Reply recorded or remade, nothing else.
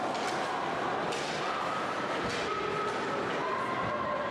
recorded